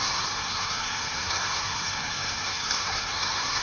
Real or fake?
fake